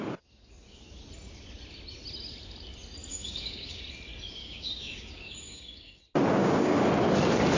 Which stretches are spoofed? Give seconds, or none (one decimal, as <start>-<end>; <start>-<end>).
3.1-3.8; 4.4-6.0; 6.4-6.9